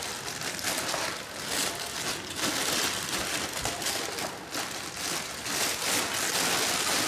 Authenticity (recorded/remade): recorded